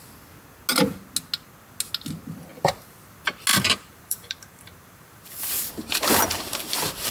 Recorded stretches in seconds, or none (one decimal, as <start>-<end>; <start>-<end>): 0.0-3.5